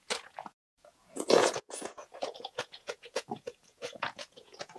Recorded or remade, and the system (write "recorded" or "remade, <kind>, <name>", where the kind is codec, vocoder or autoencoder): remade, vocoder, Vocos